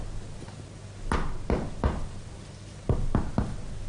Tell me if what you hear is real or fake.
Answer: real